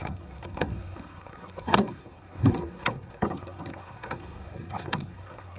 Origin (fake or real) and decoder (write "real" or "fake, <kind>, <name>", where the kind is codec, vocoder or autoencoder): fake, codec, SNAC